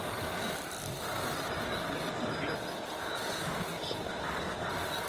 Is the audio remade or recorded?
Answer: recorded